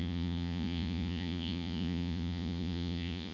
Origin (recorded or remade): remade